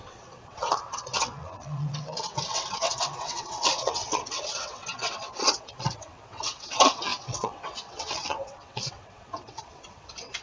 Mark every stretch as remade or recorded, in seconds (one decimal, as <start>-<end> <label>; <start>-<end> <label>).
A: 0.0-10.4 remade